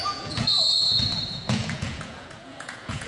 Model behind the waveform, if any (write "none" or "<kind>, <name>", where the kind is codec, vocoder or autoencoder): vocoder, Vocos